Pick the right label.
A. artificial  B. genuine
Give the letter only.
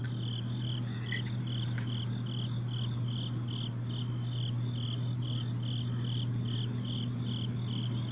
B